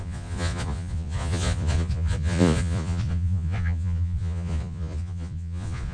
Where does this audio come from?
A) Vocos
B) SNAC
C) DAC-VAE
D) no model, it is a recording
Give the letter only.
A